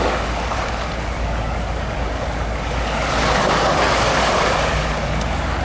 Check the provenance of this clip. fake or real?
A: fake